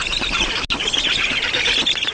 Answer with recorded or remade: recorded